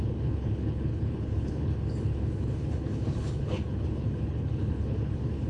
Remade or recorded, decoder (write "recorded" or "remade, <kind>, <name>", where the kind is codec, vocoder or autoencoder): remade, codec, HILCodec